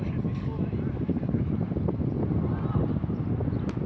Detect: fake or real real